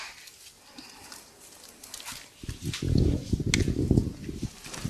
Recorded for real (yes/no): yes